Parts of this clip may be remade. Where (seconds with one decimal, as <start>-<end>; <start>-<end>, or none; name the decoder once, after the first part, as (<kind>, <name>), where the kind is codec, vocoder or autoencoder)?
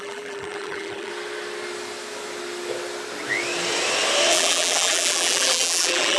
0.0-1.1 (vocoder, BigVGAN v2); 4.3-6.2